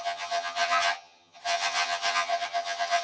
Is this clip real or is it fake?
fake